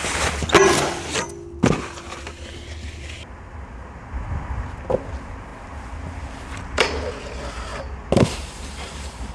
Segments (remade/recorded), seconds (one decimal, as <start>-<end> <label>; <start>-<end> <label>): 0.0-9.3 recorded